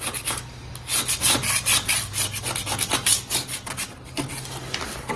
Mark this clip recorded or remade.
recorded